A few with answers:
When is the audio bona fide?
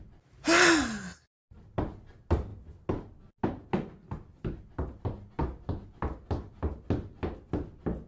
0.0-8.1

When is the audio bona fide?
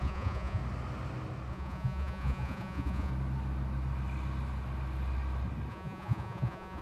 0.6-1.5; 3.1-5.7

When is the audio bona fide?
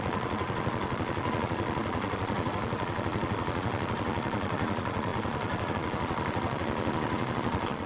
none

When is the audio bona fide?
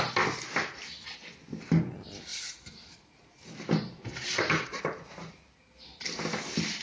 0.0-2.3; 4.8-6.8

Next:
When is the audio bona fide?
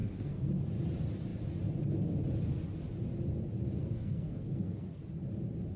0.5-3.8; 5.0-5.8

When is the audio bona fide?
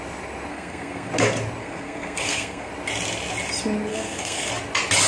0.0-0.5; 1.1-1.6; 2.7-3.9; 4.5-5.1